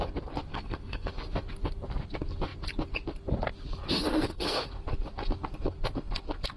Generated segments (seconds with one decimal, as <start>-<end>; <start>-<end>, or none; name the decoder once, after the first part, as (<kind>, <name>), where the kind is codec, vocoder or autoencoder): 0.5-1.1 (codec, SNAC); 4.1-4.6